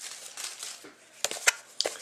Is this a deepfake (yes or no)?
no